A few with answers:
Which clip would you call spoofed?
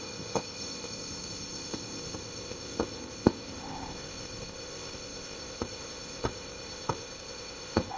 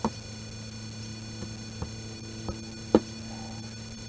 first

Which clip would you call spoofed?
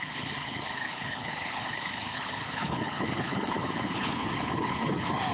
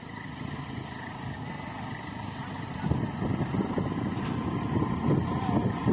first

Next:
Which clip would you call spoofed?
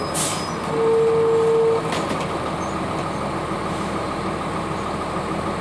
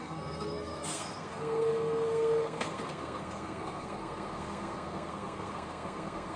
second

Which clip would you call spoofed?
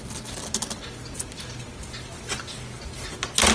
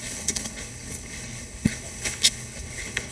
second